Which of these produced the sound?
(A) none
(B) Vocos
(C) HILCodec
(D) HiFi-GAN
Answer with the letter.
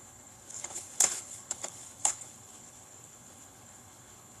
C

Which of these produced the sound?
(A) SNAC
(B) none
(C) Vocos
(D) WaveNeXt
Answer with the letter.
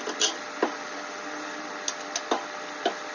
B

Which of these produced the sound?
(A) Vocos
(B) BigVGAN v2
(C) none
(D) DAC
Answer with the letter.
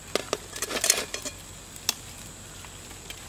C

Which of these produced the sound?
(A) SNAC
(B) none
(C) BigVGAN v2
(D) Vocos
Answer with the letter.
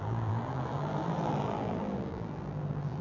C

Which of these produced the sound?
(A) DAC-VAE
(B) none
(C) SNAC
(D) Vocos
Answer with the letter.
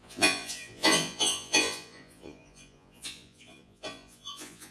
D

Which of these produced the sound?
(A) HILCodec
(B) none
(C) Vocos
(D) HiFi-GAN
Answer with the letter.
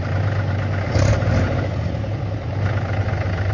B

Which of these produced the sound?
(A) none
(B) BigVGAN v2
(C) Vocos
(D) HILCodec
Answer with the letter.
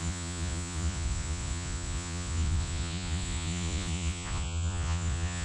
C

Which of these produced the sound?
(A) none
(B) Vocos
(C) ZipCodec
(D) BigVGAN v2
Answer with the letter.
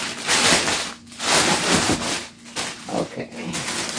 A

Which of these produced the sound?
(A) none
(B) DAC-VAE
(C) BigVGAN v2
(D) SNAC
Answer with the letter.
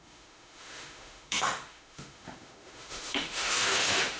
B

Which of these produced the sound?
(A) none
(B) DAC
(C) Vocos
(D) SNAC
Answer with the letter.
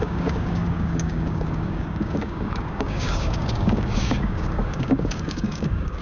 B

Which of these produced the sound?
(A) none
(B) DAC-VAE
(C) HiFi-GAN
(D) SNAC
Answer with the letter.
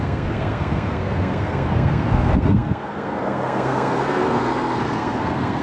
D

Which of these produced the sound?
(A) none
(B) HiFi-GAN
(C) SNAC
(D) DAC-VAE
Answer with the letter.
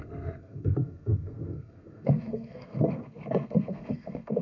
C